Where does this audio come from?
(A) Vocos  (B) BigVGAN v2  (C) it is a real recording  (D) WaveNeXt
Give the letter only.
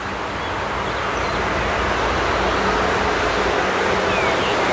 C